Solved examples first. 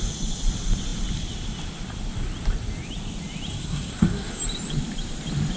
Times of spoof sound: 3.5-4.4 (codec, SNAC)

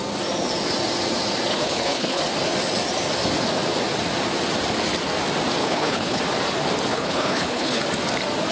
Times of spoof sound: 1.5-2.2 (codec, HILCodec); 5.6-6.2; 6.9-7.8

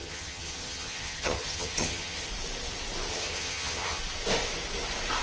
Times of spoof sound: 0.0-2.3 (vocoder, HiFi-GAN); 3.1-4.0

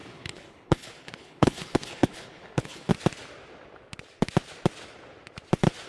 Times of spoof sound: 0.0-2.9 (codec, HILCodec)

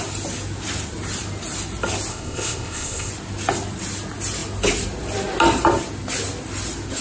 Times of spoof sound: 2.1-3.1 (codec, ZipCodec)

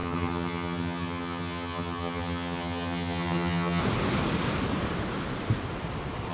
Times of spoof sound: 0.0-3.8 (vocoder, HiFi-GAN)

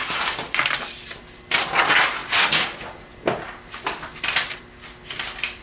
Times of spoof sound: 0.0-1.2 (vocoder, BigVGAN v2)